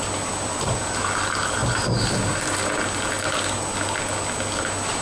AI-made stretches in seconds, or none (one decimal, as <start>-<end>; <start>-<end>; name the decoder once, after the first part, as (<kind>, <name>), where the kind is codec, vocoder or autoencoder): none